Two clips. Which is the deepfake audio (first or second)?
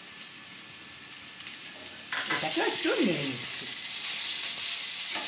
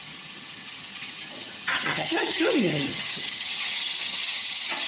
second